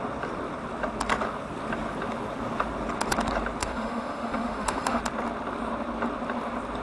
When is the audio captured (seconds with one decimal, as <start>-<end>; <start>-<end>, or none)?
0.0-3.6; 5.0-6.8